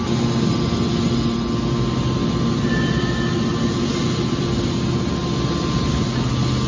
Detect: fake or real real